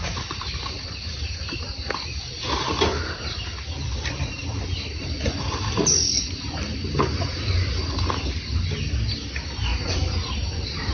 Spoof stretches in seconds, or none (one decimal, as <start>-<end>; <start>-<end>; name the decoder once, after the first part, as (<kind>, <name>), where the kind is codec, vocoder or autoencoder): none